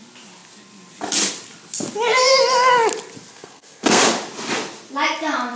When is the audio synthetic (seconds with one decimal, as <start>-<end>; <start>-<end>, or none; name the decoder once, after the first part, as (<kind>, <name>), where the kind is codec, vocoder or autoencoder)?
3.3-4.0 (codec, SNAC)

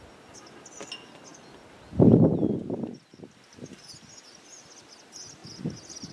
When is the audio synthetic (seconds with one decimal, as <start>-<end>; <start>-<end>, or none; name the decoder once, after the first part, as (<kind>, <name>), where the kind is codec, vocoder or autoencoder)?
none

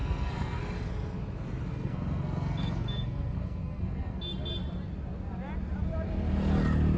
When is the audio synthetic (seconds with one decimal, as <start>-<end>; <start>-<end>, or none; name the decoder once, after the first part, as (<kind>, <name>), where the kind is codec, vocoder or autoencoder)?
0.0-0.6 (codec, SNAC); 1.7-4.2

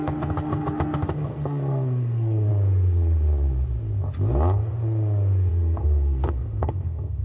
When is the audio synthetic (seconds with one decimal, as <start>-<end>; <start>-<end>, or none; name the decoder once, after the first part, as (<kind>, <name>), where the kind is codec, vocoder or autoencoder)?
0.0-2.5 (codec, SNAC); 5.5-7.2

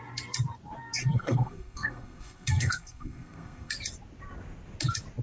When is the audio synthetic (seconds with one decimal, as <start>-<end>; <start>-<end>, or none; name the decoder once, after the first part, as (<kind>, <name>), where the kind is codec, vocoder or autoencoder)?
1.0-3.7 (codec, SNAC)